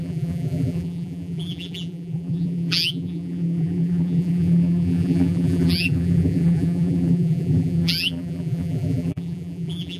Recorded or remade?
remade